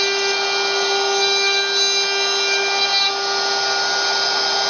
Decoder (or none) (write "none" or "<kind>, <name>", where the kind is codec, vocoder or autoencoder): none